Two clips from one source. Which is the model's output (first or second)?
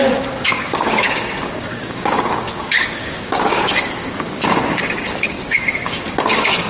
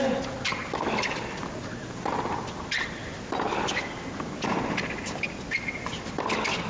first